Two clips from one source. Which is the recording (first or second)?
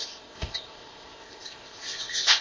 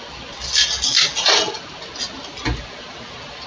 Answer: second